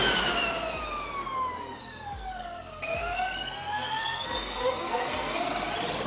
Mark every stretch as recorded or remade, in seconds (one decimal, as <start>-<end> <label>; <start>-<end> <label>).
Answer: 0.0-1.8 recorded; 1.8-5.5 remade; 5.5-6.1 recorded